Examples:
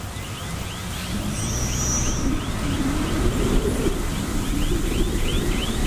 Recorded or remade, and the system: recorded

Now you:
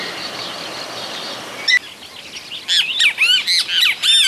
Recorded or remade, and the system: recorded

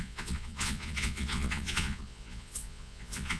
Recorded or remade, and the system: remade, vocoder, Vocos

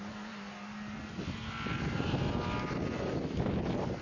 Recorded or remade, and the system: recorded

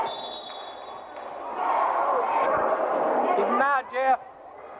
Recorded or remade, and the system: recorded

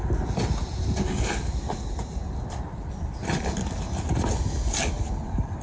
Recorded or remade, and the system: recorded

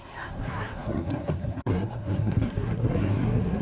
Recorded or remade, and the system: remade, codec, SNAC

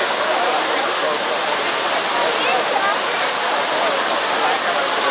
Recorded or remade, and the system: recorded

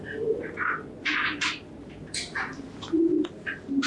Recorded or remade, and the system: recorded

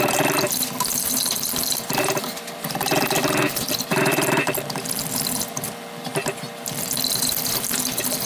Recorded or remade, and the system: recorded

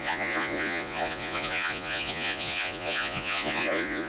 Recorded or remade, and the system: remade, vocoder, Vocos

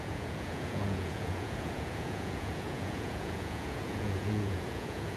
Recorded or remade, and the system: remade, vocoder, Vocos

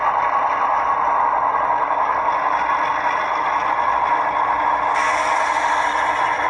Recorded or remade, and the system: recorded